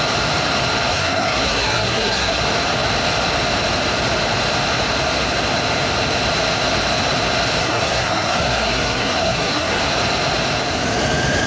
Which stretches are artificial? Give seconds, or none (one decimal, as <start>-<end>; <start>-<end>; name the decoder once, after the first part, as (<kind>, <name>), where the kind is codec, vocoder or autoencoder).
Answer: 0.9-2.4 (codec, SNAC); 7.6-9.8